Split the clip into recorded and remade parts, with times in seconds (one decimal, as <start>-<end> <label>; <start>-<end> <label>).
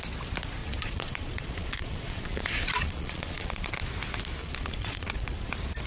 0.0-0.6 recorded; 0.6-3.7 remade; 3.7-4.4 recorded; 4.4-5.5 remade; 5.5-5.9 recorded